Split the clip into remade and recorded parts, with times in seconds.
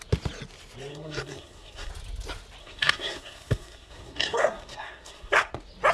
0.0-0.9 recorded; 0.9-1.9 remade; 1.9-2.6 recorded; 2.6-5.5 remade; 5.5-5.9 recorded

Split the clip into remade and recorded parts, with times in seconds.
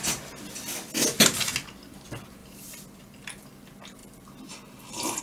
0.0-2.4 recorded; 2.4-3.0 remade; 3.0-4.0 recorded; 4.0-5.2 remade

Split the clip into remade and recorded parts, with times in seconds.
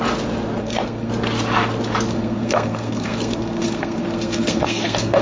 0.0-0.6 recorded; 0.6-1.1 remade; 1.1-2.1 recorded; 2.1-5.2 remade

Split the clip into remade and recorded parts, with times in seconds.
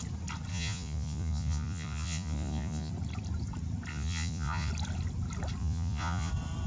0.0-0.5 recorded; 0.5-2.9 remade; 2.9-3.9 recorded; 3.9-4.7 remade; 4.7-5.6 recorded; 5.6-6.3 remade; 6.3-6.7 recorded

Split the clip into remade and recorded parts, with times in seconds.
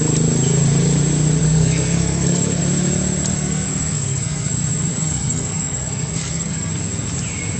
0.0-1.4 recorded; 1.4-2.6 remade; 2.6-3.3 recorded; 3.3-4.5 remade; 4.5-4.9 recorded; 4.9-6.7 remade; 6.7-7.6 recorded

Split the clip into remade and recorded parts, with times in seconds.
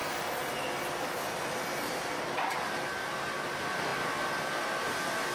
0.0-5.3 recorded